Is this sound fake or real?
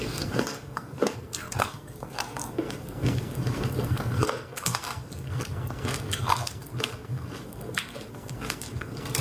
fake